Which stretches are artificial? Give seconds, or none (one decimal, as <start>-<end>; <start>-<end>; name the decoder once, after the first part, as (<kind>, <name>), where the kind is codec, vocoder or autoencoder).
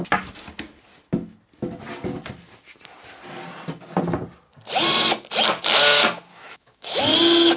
6.3-7.0 (autoencoder, DAC-VAE)